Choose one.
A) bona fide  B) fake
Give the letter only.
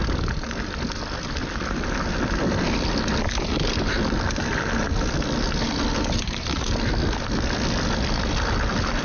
A